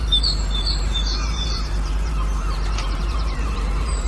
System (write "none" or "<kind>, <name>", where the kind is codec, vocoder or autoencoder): vocoder, BigVGAN v2